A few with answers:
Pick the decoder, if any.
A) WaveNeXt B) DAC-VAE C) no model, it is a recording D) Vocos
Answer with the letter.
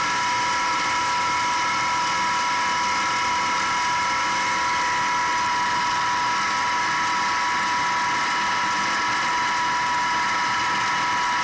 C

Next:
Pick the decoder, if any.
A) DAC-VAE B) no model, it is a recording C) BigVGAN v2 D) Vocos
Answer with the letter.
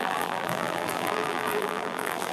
C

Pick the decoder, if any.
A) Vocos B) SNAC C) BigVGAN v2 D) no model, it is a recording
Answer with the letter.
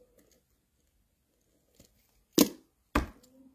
D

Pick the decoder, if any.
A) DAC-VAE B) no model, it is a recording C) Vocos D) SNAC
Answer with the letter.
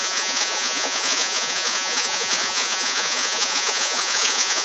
C